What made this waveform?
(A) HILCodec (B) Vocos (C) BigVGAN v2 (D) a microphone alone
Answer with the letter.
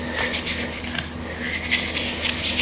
D